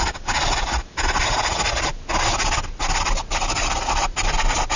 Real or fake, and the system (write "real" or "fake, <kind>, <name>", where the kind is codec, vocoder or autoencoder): real